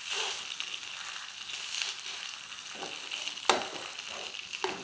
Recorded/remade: recorded